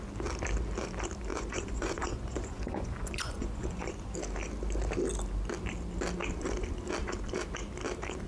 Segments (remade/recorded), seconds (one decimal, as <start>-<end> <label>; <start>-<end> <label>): 0.0-1.3 recorded; 1.3-4.1 remade; 4.1-8.3 recorded